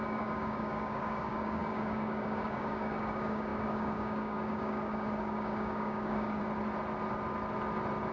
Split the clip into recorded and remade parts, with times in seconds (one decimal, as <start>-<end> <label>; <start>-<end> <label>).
0.0-6.4 remade; 6.4-8.1 recorded

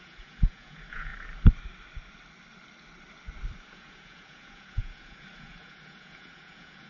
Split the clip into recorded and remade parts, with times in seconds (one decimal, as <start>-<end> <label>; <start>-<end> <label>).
0.0-1.1 remade; 1.1-3.7 recorded; 3.7-6.9 remade